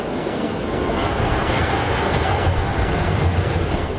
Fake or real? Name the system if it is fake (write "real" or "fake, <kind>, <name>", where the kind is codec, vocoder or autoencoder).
fake, codec, SNAC